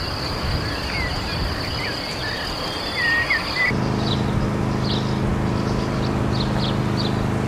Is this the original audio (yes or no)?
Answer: yes